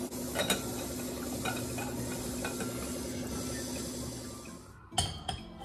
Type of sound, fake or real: real